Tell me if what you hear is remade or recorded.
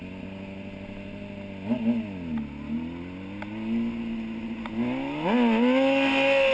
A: recorded